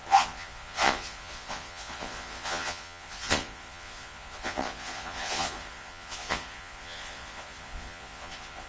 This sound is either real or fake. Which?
fake